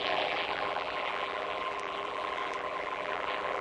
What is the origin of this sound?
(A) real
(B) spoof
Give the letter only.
B